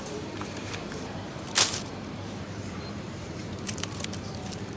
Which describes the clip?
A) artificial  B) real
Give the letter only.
A